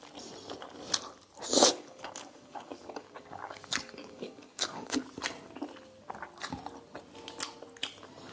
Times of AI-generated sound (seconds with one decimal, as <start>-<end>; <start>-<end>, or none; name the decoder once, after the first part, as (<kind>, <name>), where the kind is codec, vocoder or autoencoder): 1.5-5.0 (codec, DAC)